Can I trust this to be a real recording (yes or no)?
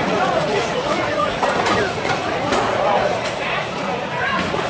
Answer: no